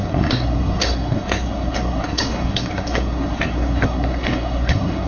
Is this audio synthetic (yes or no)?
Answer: yes